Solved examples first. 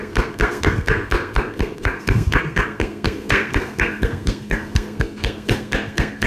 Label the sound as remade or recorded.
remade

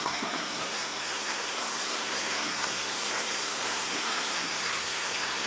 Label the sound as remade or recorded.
remade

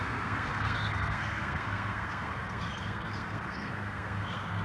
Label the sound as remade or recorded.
remade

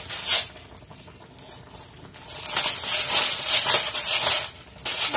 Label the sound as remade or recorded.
recorded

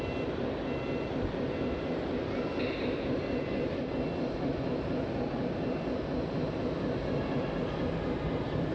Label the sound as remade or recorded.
recorded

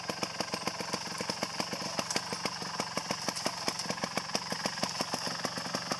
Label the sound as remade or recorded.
recorded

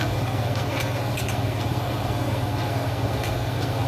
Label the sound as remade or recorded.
remade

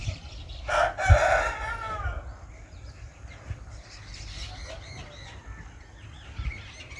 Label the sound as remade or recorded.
recorded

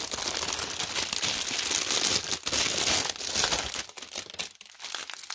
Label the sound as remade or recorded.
recorded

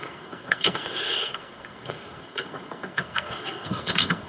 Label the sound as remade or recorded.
remade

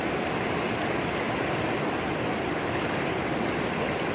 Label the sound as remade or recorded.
recorded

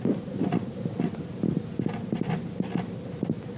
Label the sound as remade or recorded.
recorded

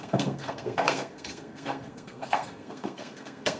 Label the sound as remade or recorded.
remade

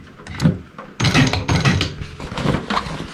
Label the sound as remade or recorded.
recorded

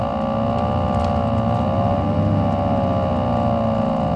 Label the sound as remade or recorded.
recorded